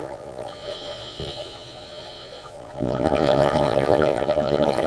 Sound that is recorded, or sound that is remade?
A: remade